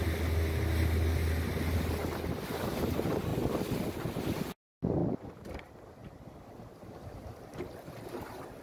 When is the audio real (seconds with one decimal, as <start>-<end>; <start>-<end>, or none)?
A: 0.0-5.0; 5.6-6.0; 7.2-8.6